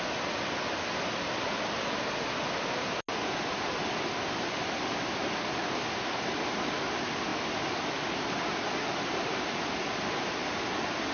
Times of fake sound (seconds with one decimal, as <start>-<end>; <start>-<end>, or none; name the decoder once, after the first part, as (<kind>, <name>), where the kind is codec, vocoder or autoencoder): none